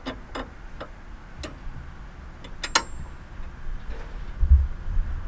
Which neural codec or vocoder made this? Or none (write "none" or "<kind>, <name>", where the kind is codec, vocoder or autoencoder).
none